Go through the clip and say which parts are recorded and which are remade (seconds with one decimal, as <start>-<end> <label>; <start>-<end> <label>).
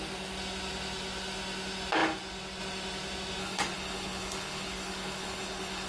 0.0-3.4 recorded; 3.4-5.9 remade